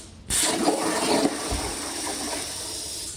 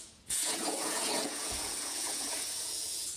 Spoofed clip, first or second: second